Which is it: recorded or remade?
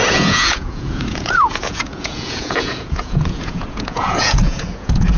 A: remade